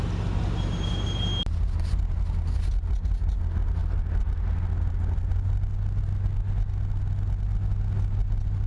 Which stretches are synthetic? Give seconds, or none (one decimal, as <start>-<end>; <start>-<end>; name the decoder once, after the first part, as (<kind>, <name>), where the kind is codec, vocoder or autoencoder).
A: none